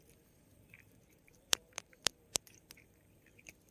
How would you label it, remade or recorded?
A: remade